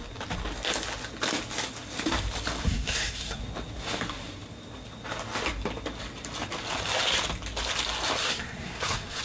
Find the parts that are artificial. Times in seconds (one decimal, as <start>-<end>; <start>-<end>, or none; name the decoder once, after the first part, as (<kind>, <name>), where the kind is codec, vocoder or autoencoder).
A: 2.6-3.4 (codec, SNAC); 8.2-9.2